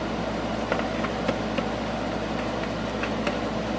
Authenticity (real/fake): real